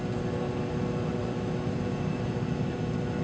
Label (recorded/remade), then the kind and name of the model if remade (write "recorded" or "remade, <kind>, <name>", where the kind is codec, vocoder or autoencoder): recorded